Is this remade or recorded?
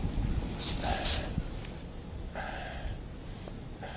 recorded